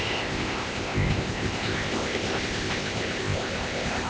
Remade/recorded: remade